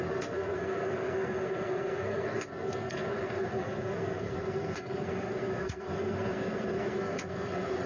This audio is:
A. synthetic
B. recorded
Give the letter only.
A